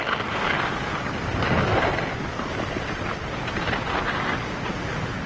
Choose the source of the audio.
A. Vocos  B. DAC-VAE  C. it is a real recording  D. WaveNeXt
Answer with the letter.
C